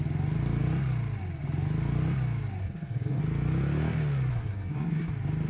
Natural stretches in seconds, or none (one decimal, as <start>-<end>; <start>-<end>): 0.0-2.6; 3.2-4.3; 5.1-5.5